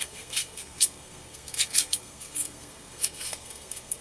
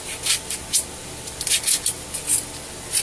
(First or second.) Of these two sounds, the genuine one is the second